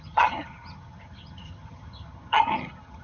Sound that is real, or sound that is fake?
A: fake